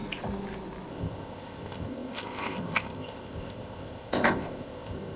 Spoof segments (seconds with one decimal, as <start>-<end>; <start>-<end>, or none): 0.9-5.2